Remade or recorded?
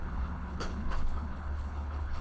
remade